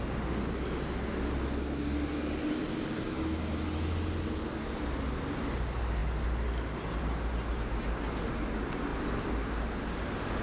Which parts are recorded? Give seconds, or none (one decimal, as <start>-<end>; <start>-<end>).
0.0-10.4